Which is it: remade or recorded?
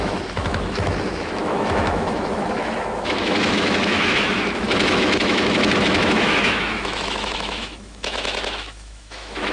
remade